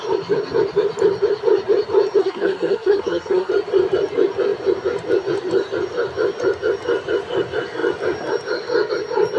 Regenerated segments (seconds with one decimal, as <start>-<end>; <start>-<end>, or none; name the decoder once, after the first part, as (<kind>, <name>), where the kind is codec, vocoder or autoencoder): 2.2-3.5 (codec, SNAC)